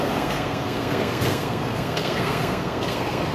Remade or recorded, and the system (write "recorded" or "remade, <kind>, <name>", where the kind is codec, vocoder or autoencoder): remade, codec, SNAC